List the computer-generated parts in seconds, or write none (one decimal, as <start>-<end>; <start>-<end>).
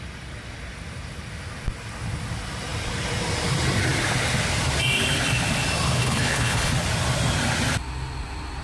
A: 6.0-6.7